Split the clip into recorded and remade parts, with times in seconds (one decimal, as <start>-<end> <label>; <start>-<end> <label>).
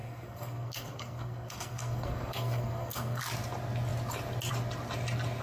0.0-3.2 remade; 3.2-5.4 recorded